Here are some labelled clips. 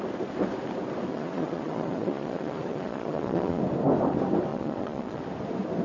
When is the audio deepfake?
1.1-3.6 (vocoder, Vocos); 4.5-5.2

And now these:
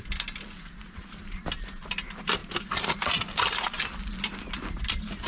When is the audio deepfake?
none

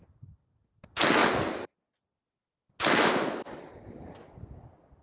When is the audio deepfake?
none

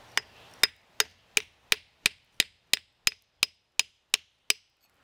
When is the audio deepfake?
none